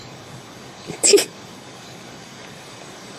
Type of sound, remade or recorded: remade